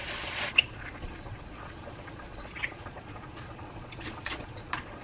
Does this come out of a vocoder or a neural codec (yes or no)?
yes